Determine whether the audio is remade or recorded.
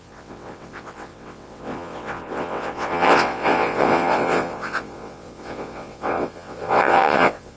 remade